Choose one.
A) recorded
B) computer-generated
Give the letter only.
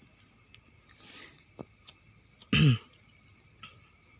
A